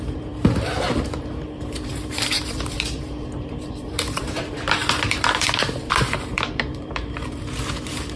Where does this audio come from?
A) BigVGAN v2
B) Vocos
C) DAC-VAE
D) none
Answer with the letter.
A